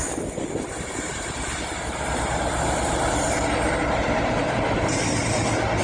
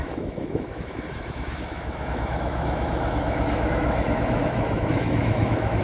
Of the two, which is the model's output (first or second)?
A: second